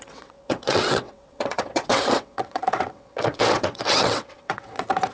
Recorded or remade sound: remade